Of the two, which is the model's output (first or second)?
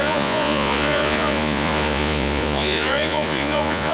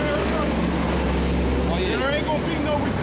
first